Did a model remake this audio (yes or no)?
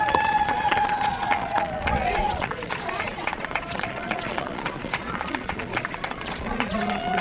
yes